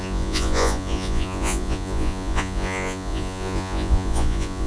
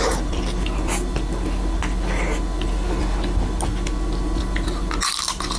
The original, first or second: second